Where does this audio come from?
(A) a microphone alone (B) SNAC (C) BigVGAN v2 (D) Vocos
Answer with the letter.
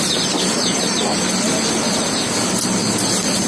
A